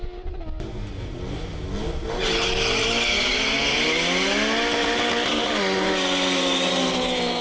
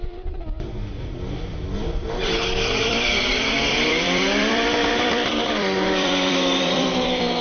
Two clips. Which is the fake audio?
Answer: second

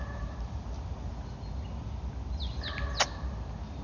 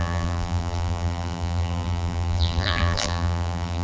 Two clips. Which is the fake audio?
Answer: second